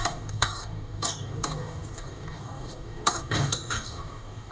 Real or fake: fake